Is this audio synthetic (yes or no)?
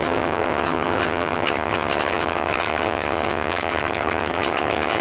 yes